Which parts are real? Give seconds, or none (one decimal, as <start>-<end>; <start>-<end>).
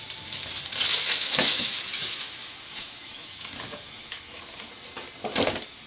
0.0-0.9; 4.4-5.9